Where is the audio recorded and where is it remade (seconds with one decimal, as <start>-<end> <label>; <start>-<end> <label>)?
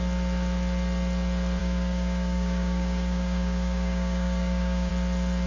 0.0-1.6 recorded; 1.6-4.9 remade; 4.9-5.5 recorded